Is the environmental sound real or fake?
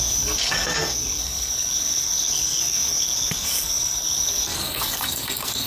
fake